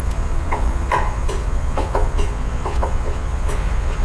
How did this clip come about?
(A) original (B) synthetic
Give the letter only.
B